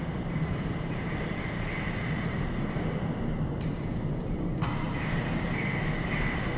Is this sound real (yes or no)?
no